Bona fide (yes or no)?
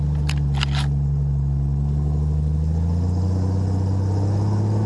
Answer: yes